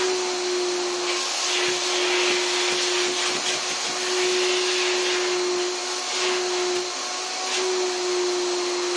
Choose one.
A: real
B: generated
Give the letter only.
A